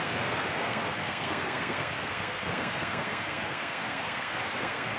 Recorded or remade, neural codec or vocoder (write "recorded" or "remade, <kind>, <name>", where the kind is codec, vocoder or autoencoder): remade, codec, SNAC